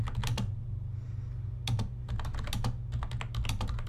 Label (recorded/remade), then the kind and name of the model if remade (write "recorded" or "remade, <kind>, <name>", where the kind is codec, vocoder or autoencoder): recorded